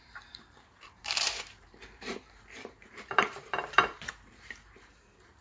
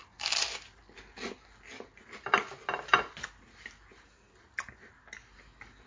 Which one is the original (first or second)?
second